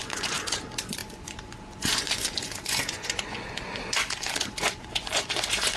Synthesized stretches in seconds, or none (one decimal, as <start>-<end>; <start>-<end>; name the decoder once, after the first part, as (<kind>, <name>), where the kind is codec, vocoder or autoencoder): 0.0-5.8 (vocoder, Vocos)